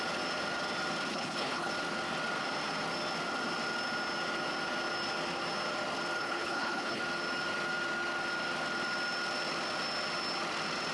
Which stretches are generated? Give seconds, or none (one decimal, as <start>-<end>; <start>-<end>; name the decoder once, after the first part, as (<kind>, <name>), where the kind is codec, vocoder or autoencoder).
1.1-1.7 (codec, HILCodec); 6.2-7.0